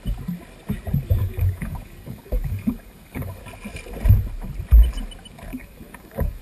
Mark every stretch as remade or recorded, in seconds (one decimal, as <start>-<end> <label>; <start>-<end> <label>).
0.0-1.2 recorded; 1.2-3.4 remade; 3.4-5.5 recorded; 5.5-6.4 remade